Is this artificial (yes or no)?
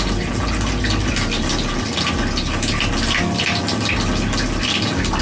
no